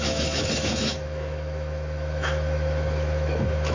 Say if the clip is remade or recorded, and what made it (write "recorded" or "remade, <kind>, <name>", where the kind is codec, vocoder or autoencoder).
remade, autoencoder, DAC-VAE